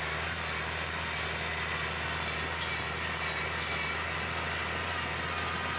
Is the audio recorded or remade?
recorded